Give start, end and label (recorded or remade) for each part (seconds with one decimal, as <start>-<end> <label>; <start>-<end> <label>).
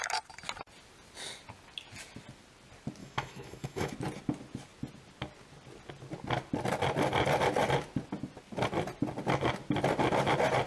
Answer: 0.0-3.0 recorded; 3.0-3.9 remade; 3.9-10.7 recorded